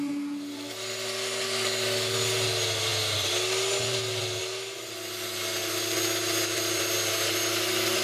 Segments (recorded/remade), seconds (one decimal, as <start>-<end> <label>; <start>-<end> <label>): 0.0-8.0 recorded